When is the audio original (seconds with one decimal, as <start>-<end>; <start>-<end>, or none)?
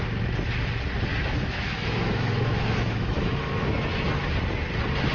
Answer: 0.0-1.1; 4.2-5.1